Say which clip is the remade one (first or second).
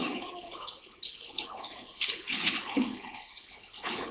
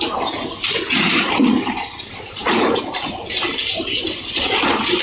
first